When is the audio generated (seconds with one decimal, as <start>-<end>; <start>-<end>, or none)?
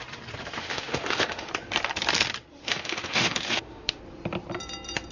0.6-1.5; 2.6-4.0